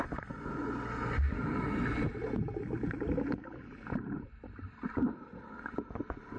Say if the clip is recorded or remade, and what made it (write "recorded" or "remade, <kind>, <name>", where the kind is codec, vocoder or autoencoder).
recorded